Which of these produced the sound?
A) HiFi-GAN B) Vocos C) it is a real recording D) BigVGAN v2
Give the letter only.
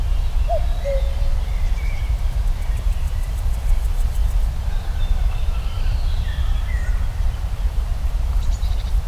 D